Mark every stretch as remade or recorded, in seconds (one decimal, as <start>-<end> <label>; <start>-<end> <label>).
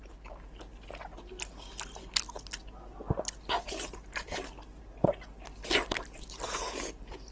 0.0-7.3 recorded